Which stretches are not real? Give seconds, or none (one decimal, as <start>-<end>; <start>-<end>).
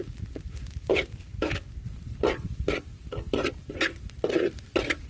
0.5-3.6